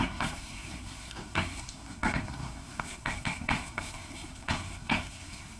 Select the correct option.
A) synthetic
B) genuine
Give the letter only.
A